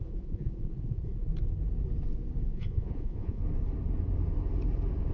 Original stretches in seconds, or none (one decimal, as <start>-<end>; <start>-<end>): 1.3-2.5; 3.4-5.1